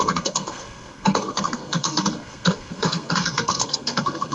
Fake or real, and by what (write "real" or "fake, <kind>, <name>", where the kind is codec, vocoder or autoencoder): fake, codec, SNAC